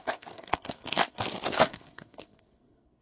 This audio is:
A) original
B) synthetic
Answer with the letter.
B